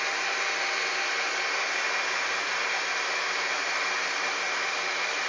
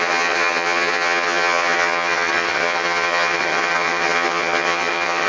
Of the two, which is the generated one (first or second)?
second